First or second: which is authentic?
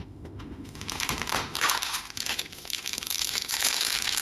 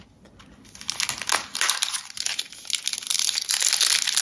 second